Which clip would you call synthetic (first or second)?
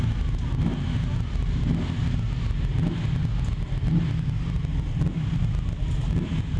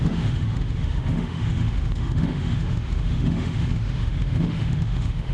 second